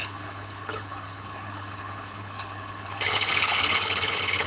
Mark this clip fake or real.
fake